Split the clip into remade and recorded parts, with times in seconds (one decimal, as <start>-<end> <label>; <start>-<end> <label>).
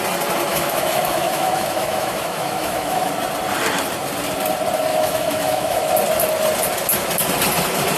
0.0-0.5 recorded; 0.5-3.1 remade; 3.1-4.9 recorded; 4.9-5.9 remade; 5.9-8.0 recorded